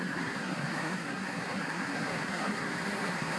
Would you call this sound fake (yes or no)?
yes